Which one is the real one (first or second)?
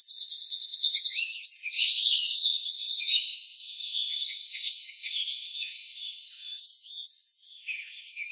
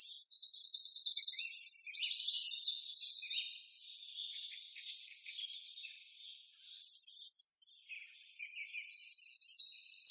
second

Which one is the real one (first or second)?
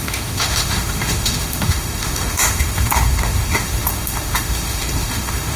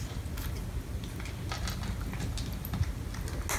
second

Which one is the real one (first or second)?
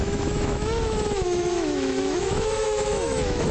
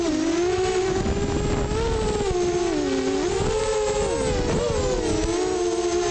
second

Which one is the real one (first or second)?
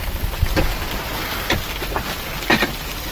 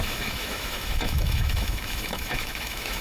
first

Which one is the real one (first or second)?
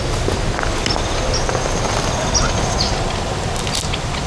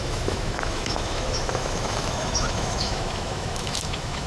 first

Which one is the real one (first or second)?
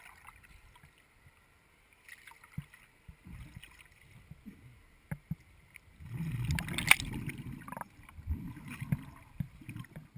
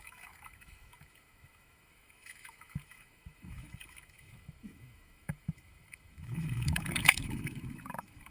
first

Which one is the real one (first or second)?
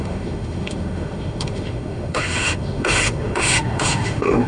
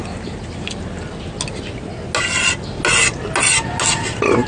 second